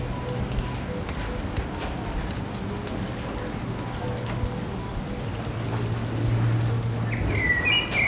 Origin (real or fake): real